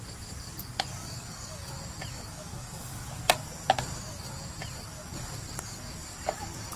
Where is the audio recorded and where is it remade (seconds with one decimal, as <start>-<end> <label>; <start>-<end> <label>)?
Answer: 0.0-1.0 recorded; 1.0-1.7 remade; 1.7-2.1 recorded; 2.1-3.2 remade; 3.2-6.8 recorded